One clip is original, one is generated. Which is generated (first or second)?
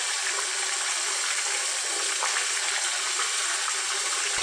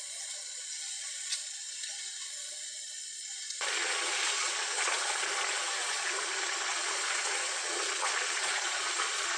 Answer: second